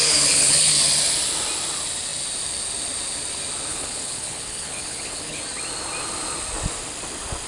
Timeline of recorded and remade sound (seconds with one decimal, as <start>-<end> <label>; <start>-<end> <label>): 0.0-0.7 remade; 0.7-3.7 recorded; 3.7-5.4 remade; 5.4-7.5 recorded